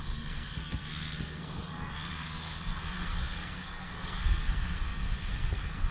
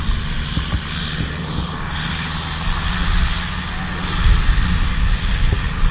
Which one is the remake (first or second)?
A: first